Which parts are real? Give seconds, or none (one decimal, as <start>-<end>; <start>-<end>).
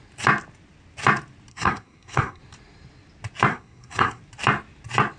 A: 0.0-1.5; 2.4-3.5; 4.2-5.2